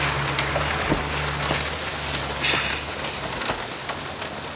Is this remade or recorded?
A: recorded